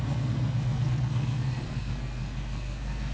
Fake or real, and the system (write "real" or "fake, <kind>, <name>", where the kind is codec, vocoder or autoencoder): fake, codec, SNAC